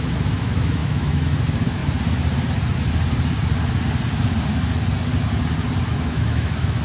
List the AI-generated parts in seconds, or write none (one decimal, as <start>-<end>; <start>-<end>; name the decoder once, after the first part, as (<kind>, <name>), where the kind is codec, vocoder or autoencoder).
0.0-1.8 (autoencoder, DAC-VAE); 5.8-6.8